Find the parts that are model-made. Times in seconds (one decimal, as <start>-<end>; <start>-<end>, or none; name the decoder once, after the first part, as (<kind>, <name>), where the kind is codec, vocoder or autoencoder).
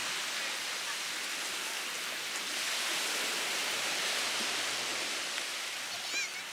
none